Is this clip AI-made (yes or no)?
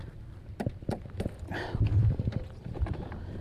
yes